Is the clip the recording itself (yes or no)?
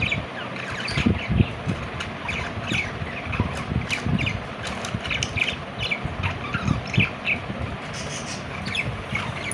yes